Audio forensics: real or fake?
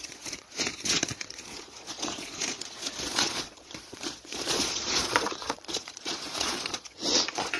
fake